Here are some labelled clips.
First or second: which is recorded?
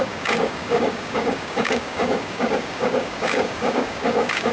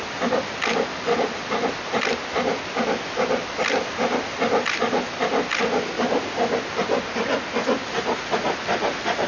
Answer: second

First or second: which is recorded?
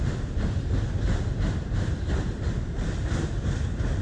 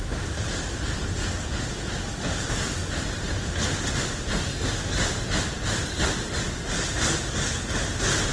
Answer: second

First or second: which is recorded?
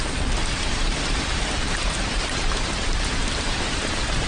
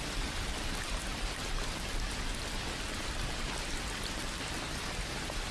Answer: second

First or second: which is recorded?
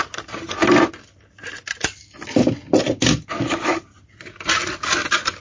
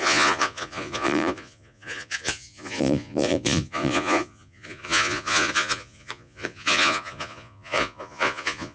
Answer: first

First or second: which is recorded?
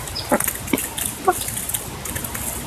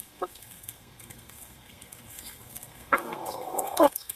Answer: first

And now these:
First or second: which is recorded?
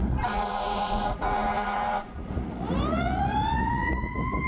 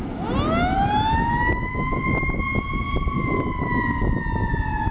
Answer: second